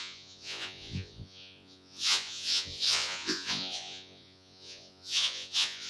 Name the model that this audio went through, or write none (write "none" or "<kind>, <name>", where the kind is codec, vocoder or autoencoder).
vocoder, Vocos